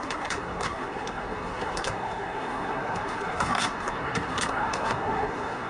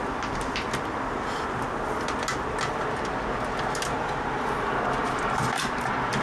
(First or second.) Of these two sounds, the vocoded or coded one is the first